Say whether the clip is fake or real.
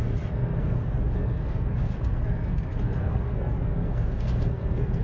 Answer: fake